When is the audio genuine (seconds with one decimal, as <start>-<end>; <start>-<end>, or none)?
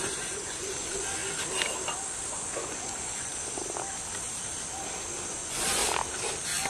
1.2-2.3; 3.3-5.3; 5.8-6.7